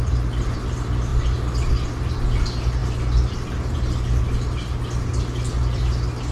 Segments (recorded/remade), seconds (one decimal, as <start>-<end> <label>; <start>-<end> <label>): 0.0-6.3 recorded